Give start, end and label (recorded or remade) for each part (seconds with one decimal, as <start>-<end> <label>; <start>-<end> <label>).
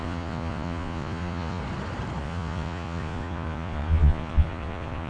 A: 0.0-1.6 remade; 1.6-2.2 recorded; 2.2-5.1 remade